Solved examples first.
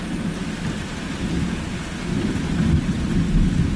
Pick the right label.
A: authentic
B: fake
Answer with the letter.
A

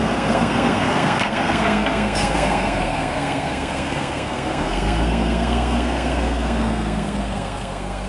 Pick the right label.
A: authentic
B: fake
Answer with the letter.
B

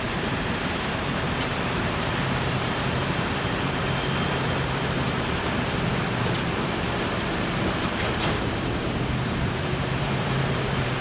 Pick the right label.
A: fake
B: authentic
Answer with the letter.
A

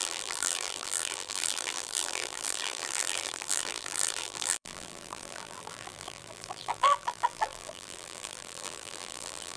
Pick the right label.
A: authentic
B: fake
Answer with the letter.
B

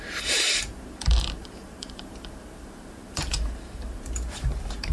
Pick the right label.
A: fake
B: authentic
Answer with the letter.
A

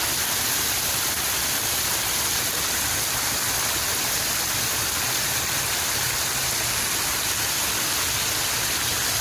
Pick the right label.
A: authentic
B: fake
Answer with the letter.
A